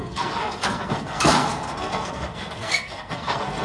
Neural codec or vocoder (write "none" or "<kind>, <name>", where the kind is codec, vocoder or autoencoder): codec, SNAC